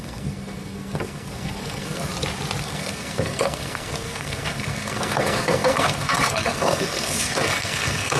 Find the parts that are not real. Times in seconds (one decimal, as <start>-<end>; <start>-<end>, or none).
0.0-2.1; 2.6-8.2